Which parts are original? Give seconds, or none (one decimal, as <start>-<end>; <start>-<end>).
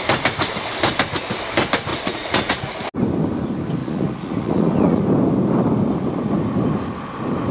0.0-1.9; 2.9-3.8; 5.0-7.5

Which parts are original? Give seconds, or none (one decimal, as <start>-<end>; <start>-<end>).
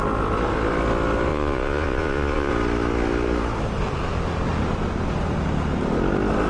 0.0-1.3; 2.5-6.5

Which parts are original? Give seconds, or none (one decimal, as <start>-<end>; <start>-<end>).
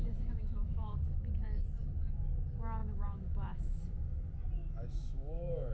0.9-2.8; 3.8-4.6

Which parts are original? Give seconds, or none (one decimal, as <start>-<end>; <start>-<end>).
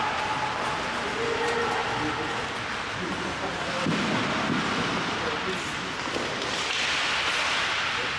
0.0-8.2